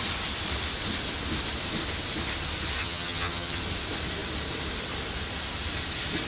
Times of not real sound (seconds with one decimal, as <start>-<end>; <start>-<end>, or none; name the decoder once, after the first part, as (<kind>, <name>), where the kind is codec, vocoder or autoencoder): 2.8-3.6 (vocoder, HiFi-GAN)